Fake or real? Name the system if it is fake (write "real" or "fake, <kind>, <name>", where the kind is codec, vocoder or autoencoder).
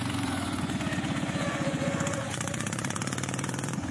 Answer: fake, vocoder, Vocos